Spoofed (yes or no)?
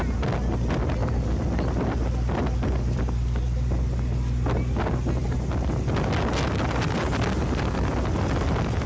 no